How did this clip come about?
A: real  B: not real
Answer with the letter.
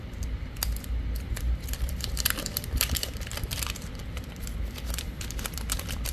B